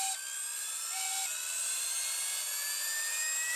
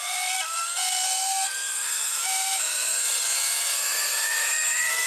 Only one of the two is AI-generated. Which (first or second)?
second